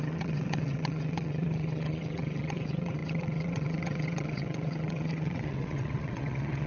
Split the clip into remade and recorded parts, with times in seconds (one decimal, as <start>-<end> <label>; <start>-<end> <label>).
0.0-6.7 remade